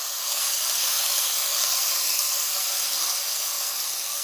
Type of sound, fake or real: fake